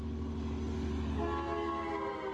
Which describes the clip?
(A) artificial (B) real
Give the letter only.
B